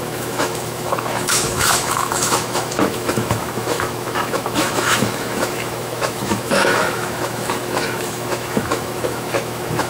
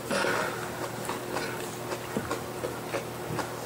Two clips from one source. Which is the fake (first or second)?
first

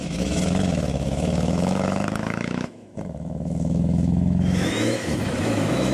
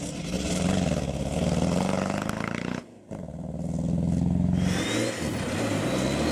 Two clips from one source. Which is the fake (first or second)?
first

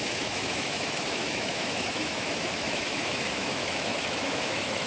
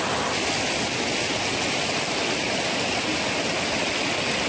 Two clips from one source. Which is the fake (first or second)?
first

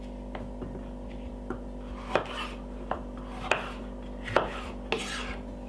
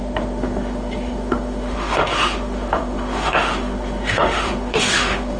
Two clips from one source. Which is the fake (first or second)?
second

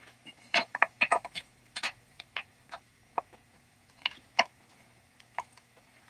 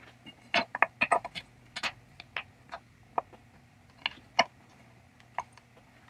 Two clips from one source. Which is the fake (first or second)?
first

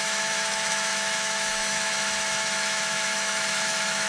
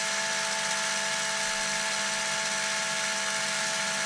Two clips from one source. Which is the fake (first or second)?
first